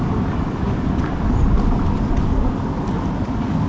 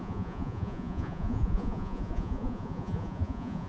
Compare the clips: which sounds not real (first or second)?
second